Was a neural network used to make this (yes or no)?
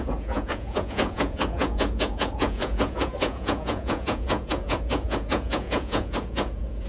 yes